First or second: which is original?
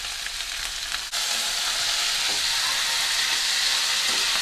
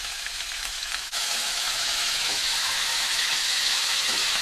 first